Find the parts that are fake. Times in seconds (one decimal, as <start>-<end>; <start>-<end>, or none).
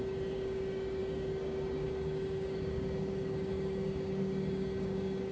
0.0-5.3